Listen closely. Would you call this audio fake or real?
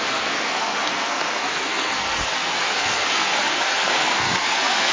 fake